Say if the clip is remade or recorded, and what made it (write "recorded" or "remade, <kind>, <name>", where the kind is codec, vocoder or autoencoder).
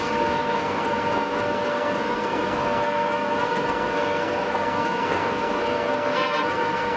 remade, codec, SNAC